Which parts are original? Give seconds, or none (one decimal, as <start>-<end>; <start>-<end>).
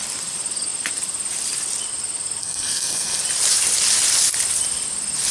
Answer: 0.0-2.4; 3.2-5.3